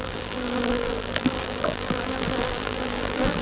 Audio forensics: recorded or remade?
remade